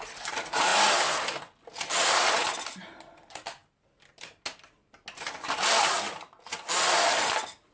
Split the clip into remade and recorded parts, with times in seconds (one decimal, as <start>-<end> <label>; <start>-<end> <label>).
0.0-0.7 remade; 0.7-2.1 recorded; 2.1-3.6 remade; 3.6-7.2 recorded; 7.2-7.7 remade